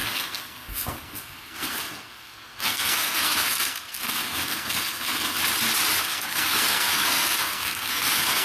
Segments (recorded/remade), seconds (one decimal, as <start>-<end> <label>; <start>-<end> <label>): 0.0-5.4 remade; 5.4-6.0 recorded; 6.0-8.4 remade